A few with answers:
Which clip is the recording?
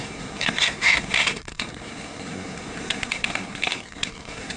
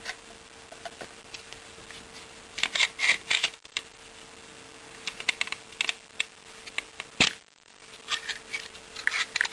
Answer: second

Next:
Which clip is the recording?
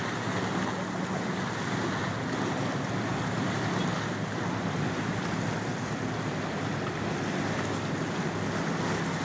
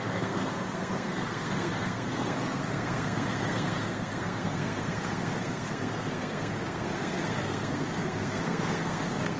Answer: first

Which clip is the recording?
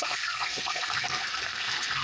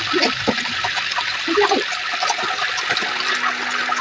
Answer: second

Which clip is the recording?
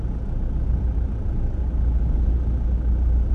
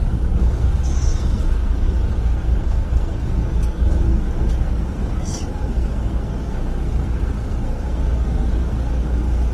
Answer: first